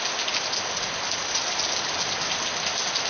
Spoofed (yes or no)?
no